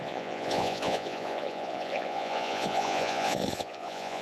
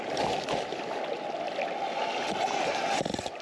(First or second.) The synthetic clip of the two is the first